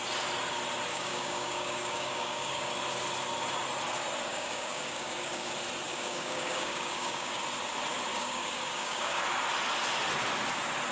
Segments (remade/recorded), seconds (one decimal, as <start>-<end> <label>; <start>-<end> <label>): 0.0-0.9 recorded; 0.9-2.7 remade; 2.7-4.3 recorded; 4.3-5.5 remade; 5.5-5.9 recorded; 5.9-7.4 remade; 7.4-8.1 recorded; 8.1-9.2 remade; 9.2-10.9 recorded